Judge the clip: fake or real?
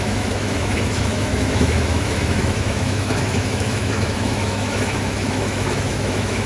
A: fake